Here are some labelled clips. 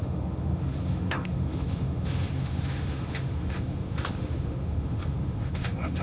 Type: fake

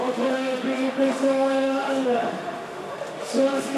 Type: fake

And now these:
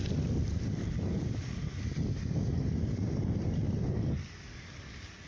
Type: real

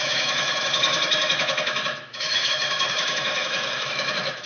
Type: fake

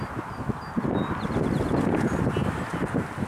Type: real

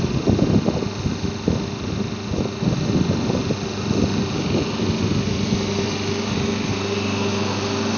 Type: real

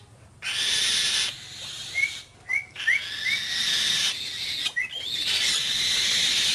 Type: real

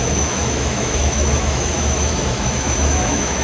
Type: fake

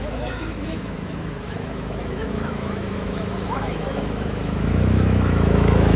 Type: fake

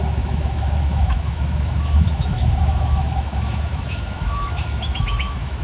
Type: fake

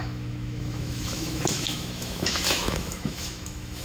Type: fake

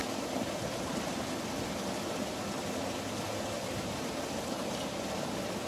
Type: real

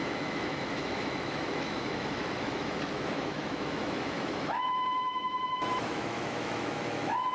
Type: fake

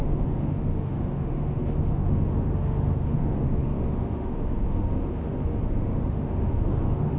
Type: fake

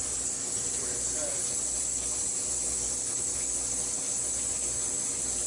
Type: real